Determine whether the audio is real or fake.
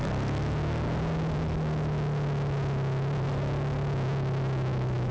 real